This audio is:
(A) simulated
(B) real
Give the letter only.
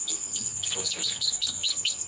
A